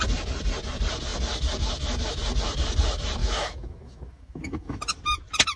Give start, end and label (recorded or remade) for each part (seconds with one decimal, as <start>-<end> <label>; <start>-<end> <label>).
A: 0.0-3.2 recorded; 3.2-4.8 remade; 4.8-5.6 recorded